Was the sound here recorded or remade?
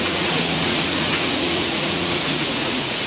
remade